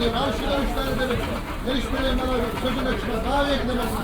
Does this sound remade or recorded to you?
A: remade